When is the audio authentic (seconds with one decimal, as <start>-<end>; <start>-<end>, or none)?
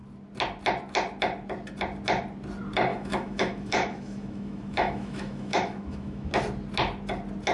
0.0-2.9; 6.3-7.5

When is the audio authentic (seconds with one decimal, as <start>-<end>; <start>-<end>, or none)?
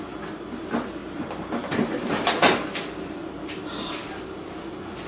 0.0-5.1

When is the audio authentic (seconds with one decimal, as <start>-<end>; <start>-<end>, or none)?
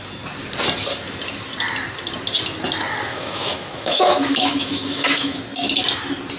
0.0-3.1; 5.4-6.4